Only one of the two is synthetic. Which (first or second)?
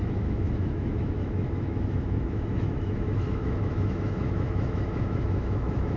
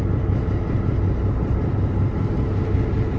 first